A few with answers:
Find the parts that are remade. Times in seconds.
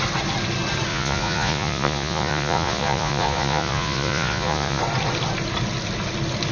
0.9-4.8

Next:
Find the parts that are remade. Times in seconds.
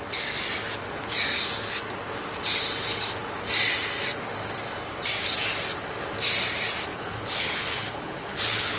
6.9-8.8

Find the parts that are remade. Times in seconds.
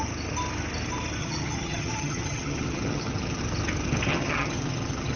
1.2-3.4; 4.1-5.2